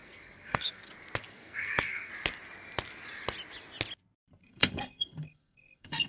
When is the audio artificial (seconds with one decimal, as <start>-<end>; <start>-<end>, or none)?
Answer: 0.0-0.9; 1.3-2.1; 4.4-6.1

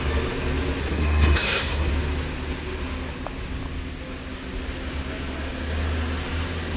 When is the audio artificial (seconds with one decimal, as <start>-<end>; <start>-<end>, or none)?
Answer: 0.8-1.9